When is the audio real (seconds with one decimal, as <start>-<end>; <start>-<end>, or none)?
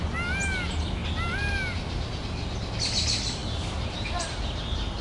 0.0-5.0